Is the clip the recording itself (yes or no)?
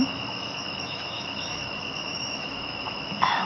no